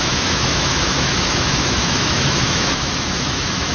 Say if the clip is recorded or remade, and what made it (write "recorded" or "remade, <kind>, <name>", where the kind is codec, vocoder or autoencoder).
remade, autoencoder, DAC-VAE